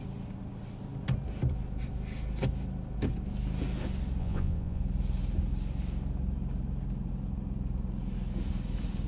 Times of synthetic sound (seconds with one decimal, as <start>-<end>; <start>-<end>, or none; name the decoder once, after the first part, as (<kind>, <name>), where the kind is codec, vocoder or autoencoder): 4.2-4.8 (vocoder, Vocos)